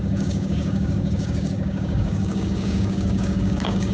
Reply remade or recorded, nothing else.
remade